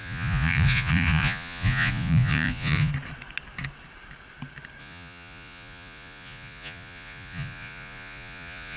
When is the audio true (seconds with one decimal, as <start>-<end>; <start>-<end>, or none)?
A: 2.9-4.8